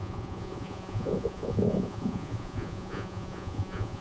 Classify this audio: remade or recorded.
remade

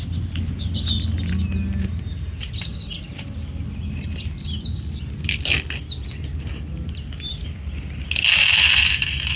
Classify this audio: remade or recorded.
recorded